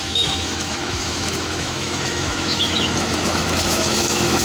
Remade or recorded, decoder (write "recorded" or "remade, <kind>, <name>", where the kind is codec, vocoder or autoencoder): remade, autoencoder, DAC-VAE